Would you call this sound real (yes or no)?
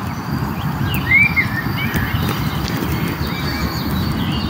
yes